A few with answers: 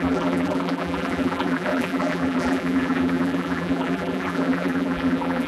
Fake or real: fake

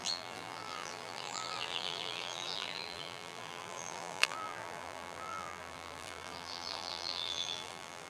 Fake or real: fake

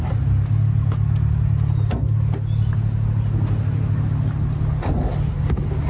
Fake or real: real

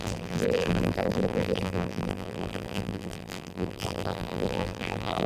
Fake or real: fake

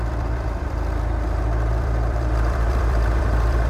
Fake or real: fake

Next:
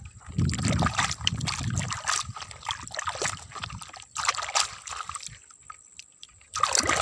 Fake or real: real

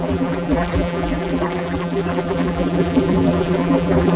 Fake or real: fake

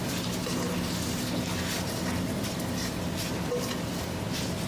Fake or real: real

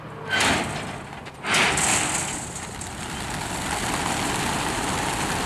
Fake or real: real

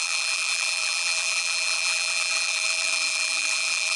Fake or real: fake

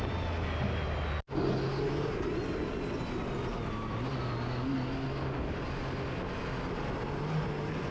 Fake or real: real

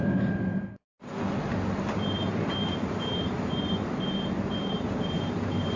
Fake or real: fake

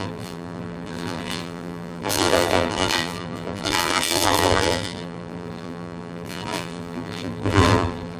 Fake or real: fake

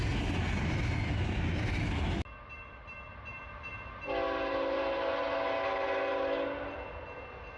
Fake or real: real